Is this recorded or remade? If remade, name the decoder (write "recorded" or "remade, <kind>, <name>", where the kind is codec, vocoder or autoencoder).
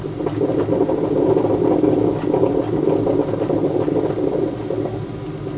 recorded